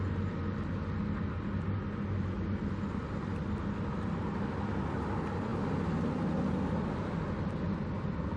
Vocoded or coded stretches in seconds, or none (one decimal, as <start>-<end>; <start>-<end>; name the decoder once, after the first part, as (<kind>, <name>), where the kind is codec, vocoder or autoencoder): none